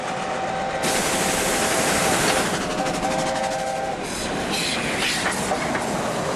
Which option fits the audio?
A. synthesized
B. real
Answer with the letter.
B